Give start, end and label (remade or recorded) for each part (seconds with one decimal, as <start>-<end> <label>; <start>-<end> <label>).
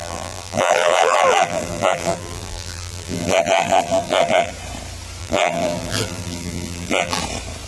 0.0-4.5 remade; 4.5-5.2 recorded; 5.2-7.2 remade; 7.2-7.7 recorded